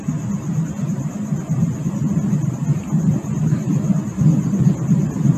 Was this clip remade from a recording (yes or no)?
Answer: no